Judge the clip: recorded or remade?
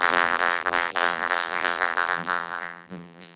remade